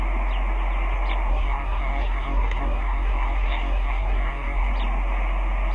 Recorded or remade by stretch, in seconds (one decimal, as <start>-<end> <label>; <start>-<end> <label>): 0.0-1.3 recorded; 1.3-4.7 remade; 4.7-5.7 recorded